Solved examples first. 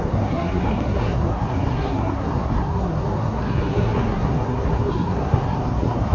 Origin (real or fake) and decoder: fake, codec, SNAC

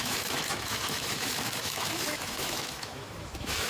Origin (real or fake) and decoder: fake, autoencoder, DAC-VAE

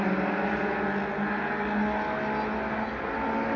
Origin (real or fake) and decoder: real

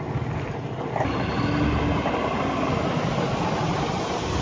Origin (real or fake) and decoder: real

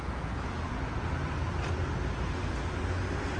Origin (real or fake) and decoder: real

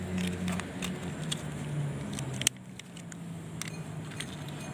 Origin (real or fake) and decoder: real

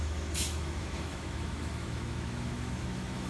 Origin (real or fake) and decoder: fake, autoencoder, DAC-VAE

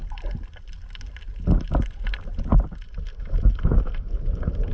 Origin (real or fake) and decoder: real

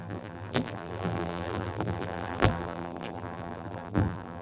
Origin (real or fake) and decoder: fake, vocoder, BigVGAN v2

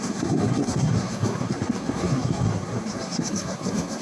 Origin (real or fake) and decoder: fake, codec, SNAC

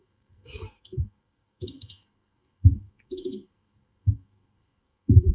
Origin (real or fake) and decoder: fake, codec, SNAC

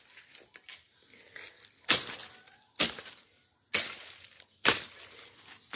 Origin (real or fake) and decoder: real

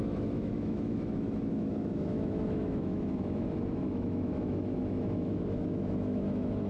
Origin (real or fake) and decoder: fake, autoencoder, DAC-VAE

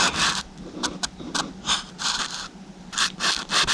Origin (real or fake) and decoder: real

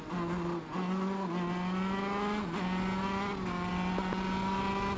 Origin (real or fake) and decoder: real